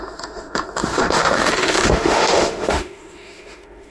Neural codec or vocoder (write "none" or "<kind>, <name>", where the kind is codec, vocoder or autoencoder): autoencoder, DAC-VAE